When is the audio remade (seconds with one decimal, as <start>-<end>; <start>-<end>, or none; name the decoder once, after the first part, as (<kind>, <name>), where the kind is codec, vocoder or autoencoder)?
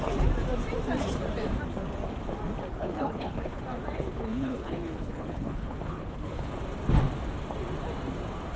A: 2.7-3.6 (codec, HILCodec); 4.1-6.5